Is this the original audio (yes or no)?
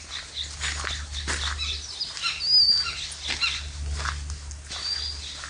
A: yes